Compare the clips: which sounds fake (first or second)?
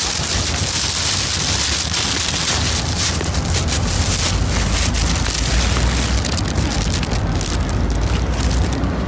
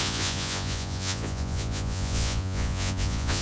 second